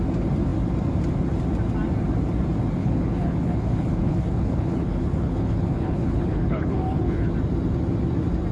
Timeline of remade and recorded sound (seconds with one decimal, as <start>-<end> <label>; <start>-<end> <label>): 0.0-2.8 recorded; 2.8-7.3 remade; 7.3-8.5 recorded